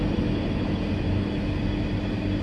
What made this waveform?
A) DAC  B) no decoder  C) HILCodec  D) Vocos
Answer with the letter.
B